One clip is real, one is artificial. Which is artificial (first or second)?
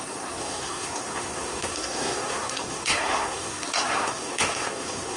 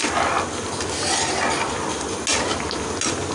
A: first